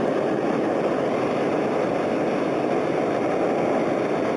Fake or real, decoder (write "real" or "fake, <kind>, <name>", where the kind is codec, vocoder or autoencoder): real